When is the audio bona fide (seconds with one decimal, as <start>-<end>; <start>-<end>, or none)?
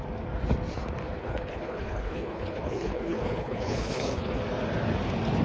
0.0-1.2; 4.4-5.4